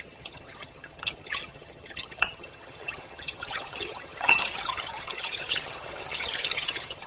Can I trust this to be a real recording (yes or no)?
no